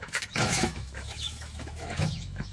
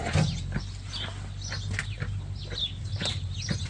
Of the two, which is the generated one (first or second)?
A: first